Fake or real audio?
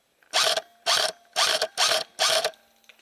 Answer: real